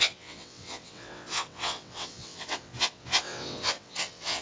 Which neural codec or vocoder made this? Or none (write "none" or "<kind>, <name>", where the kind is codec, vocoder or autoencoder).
vocoder, WaveNeXt